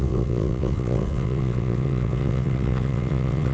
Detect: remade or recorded remade